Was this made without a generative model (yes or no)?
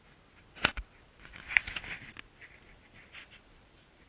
yes